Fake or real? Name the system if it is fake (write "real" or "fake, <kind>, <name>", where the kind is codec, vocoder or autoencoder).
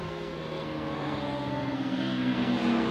fake, codec, SNAC